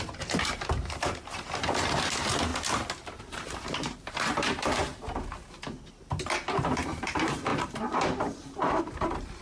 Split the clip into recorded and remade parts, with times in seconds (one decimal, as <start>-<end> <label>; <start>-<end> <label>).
0.0-2.5 remade; 2.5-3.2 recorded; 3.2-4.9 remade; 4.9-6.0 recorded; 6.0-9.4 remade